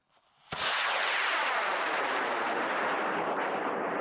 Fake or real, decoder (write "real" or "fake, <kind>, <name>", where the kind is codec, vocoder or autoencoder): fake, vocoder, BigVGAN v2